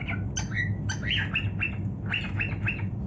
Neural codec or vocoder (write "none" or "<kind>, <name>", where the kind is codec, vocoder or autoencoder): none